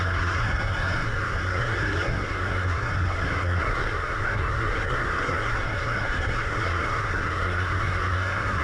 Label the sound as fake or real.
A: fake